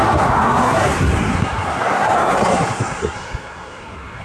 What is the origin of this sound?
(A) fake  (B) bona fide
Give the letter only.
A